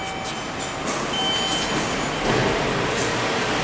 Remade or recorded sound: recorded